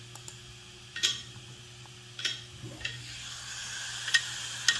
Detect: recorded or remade recorded